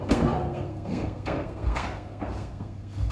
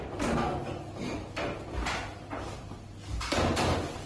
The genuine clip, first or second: second